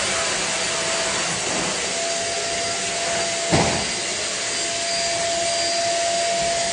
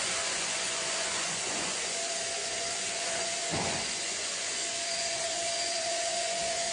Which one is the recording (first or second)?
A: first